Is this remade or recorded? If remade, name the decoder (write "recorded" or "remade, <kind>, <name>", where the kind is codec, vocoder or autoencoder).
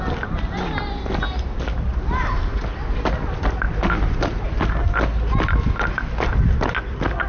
recorded